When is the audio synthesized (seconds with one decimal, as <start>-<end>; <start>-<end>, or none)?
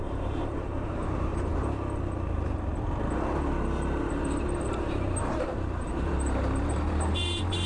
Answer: 0.0-1.3; 4.0-7.7